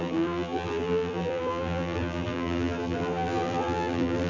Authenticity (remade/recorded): remade